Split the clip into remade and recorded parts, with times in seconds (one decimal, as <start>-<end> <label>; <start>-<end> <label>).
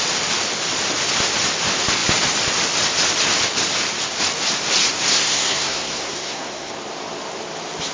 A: 0.0-5.1 recorded; 5.1-6.7 remade; 6.7-7.9 recorded